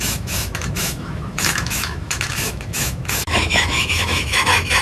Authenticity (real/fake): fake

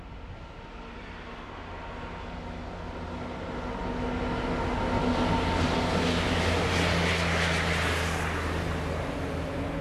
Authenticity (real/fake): real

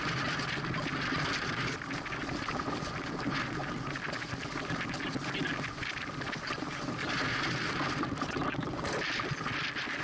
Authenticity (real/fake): real